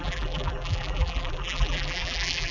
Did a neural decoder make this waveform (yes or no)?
yes